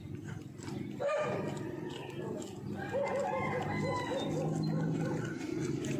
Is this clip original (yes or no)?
yes